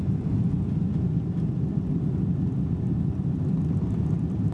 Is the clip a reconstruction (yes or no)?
no